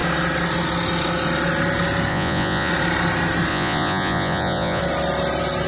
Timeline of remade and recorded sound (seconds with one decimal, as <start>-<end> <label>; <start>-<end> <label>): 0.0-2.1 recorded; 2.1-2.7 remade; 2.7-3.5 recorded; 3.5-4.8 remade; 4.8-5.7 recorded